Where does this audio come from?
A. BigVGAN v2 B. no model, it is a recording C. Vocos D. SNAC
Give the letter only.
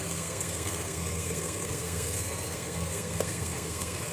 D